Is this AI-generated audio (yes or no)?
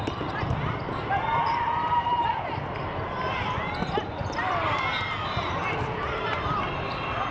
yes